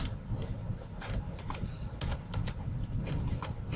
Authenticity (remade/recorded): recorded